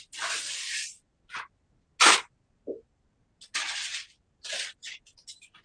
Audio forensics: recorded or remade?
recorded